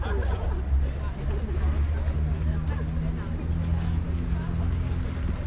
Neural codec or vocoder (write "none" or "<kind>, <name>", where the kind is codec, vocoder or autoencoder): none